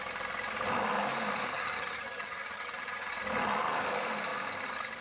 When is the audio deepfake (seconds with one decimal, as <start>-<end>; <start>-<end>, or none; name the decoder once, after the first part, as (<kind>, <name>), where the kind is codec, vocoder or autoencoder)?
1.5-3.1 (vocoder, HiFi-GAN)